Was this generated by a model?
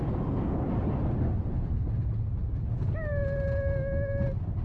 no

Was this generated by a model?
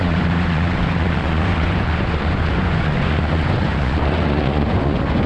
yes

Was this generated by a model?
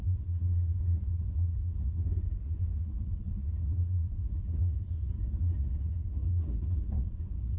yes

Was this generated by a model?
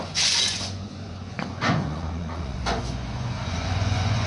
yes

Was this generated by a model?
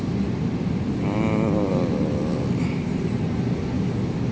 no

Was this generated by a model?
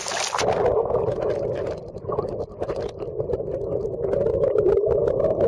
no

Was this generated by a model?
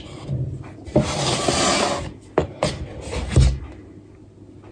no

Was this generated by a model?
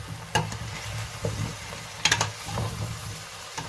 no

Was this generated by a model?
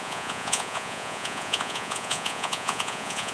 yes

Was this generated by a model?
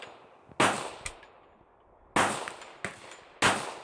no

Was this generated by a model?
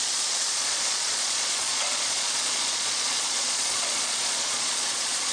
yes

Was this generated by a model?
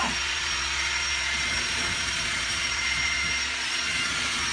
yes